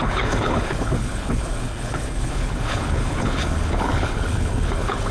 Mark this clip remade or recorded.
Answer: remade